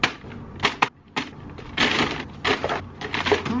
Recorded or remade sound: recorded